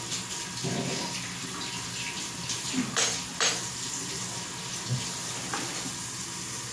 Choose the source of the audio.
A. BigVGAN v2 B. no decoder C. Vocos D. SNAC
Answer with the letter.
B